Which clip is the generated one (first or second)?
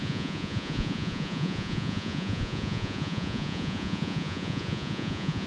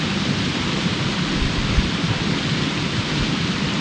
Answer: first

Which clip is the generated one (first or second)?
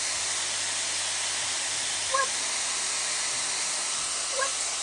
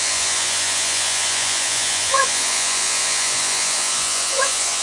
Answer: second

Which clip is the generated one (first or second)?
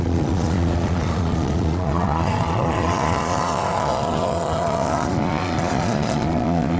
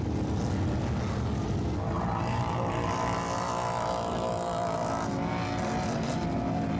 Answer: first